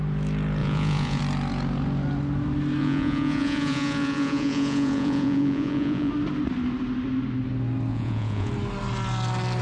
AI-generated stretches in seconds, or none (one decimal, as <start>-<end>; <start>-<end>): 0.6-1.2; 2.8-6.1; 7.9-8.5